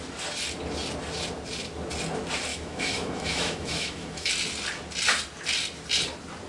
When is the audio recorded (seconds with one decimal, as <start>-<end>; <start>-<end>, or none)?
0.0-2.5; 4.3-6.5